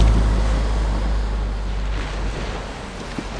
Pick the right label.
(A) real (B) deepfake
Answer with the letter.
A